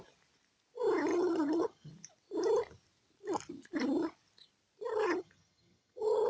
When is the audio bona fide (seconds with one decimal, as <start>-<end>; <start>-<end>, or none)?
0.0-1.1; 1.9-4.9